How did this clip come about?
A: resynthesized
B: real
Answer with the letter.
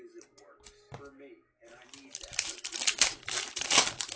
B